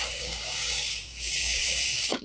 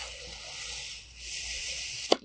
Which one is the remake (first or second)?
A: first